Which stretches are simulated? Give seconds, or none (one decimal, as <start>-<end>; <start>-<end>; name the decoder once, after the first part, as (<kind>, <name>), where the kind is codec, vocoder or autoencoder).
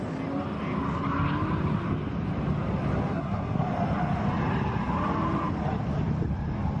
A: 3.1-3.6 (codec, SNAC)